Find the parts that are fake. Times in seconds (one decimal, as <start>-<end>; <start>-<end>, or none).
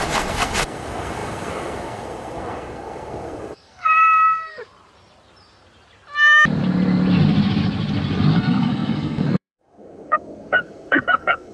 0.0-4.6; 8.3-11.5